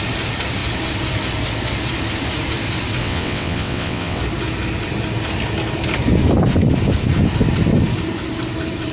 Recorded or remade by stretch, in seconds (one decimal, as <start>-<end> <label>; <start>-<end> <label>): 0.0-3.0 recorded; 3.0-4.2 remade; 4.2-8.9 recorded